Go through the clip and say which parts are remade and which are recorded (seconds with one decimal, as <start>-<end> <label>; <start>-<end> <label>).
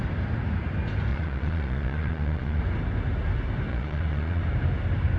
0.0-1.1 recorded; 1.1-2.6 remade; 2.6-3.7 recorded; 3.7-4.4 remade; 4.4-5.2 recorded